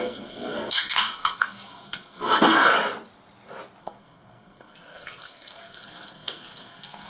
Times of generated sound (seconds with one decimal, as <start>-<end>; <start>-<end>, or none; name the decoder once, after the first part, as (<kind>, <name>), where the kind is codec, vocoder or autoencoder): 0.0-2.7 (codec, SNAC); 3.8-7.1